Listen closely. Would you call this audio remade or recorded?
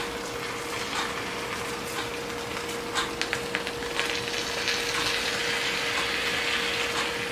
recorded